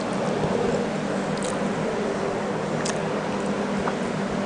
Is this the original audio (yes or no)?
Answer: yes